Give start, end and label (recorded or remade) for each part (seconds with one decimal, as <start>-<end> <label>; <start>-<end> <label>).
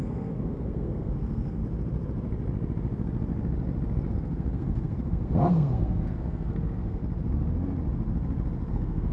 0.0-1.6 remade; 1.6-4.1 recorded; 4.1-7.0 remade; 7.0-8.7 recorded; 8.7-9.1 remade